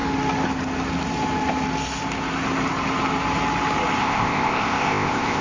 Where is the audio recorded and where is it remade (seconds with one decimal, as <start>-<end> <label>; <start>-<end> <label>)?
0.0-4.0 recorded; 4.0-5.4 remade